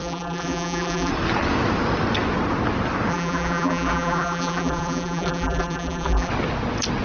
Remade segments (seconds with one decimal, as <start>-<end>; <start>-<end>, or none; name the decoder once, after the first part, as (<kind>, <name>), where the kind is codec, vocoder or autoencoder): 0.0-1.1 (vocoder, BigVGAN v2); 3.1-6.3